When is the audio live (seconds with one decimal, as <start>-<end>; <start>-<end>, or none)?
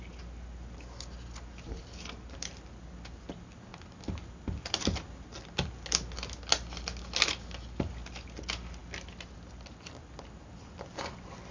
0.0-11.5